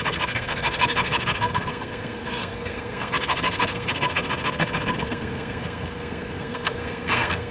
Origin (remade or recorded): remade